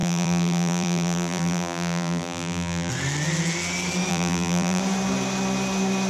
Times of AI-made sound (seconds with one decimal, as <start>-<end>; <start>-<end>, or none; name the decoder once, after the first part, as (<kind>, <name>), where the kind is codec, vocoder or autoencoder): 0.0-2.9 (vocoder, BigVGAN v2); 4.1-4.8